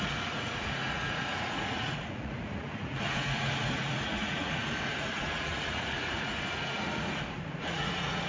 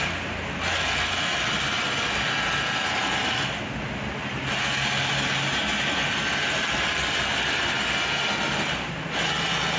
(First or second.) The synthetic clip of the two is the first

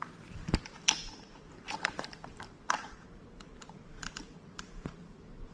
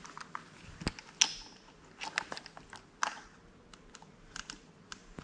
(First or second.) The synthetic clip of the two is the first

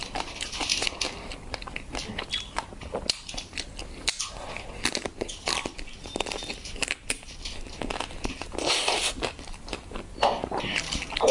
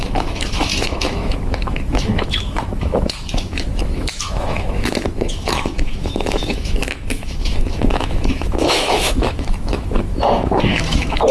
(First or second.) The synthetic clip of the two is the second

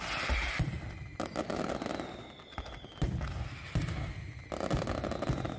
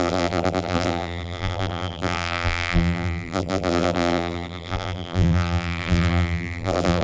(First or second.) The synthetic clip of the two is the second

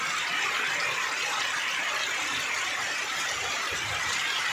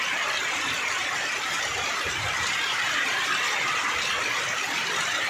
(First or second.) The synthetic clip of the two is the second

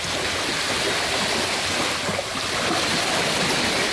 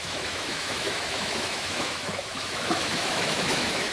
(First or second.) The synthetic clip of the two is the second